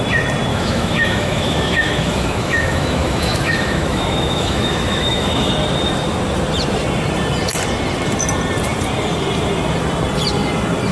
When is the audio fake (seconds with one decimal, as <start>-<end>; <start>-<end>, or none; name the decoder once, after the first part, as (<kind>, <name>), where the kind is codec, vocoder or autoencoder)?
0.5-5.5 (autoencoder, DAC-VAE)